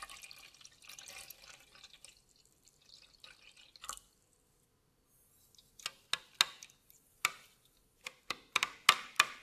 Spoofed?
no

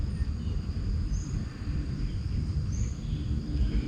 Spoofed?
yes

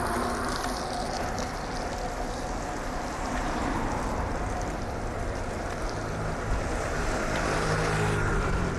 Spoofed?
no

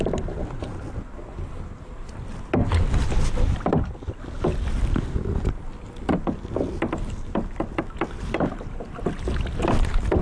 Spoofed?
no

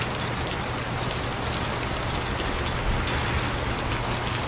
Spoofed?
no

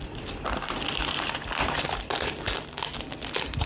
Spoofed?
no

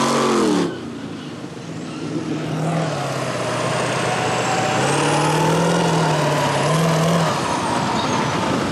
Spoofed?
no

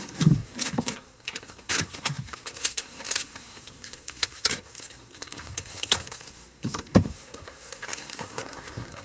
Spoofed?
yes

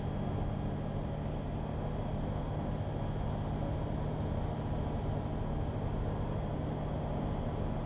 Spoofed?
no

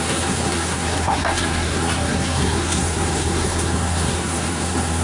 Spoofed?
yes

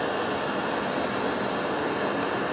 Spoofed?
no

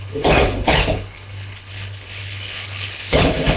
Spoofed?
yes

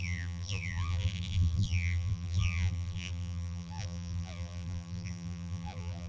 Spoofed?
yes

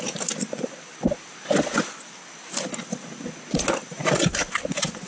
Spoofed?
no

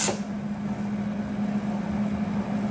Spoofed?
no